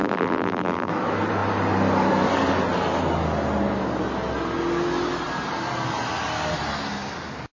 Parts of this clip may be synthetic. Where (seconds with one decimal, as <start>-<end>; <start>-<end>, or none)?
0.0-0.9